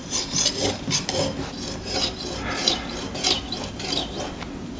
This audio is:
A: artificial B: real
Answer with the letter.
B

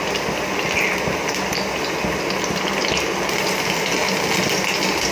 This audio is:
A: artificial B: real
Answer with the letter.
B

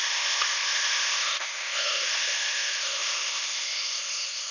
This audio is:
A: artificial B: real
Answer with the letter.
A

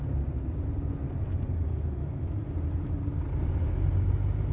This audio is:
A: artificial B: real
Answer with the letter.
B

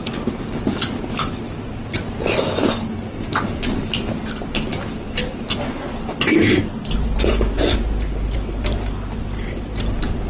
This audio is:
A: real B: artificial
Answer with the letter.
A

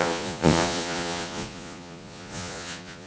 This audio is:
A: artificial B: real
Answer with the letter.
A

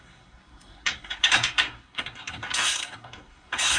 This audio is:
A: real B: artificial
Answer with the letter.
B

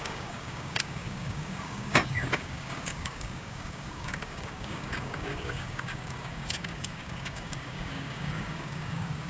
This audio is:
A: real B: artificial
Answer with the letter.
B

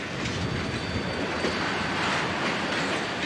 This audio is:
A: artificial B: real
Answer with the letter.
B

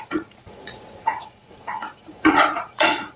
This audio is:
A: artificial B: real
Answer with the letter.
A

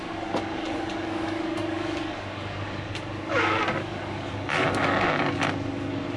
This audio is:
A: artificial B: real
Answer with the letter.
A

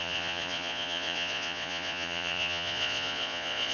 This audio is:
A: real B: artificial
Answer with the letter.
B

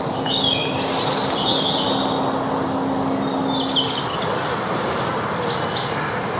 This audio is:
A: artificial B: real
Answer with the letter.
B